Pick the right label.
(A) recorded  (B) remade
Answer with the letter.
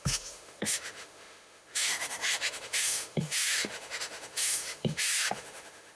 B